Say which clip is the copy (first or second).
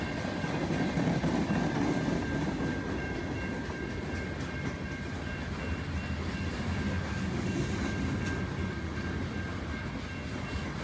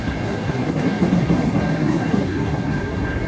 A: second